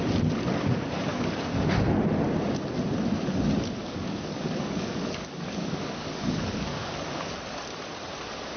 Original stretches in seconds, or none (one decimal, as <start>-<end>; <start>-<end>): 0.0-1.1; 1.7-3.8; 7.3-8.6